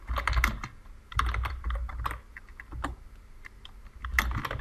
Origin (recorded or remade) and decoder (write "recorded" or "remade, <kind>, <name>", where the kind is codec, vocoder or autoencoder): recorded